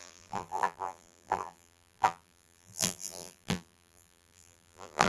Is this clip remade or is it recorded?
remade